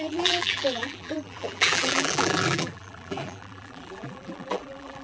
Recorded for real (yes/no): no